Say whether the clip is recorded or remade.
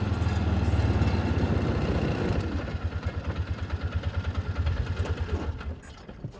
recorded